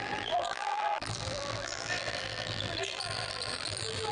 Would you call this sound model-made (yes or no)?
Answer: yes